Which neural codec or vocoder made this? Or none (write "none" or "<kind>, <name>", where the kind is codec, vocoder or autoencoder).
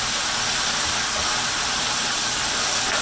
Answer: none